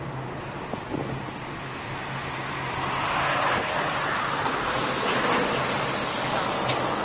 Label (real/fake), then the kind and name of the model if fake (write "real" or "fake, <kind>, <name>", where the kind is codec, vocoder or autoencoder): real